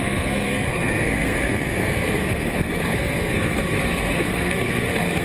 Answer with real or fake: fake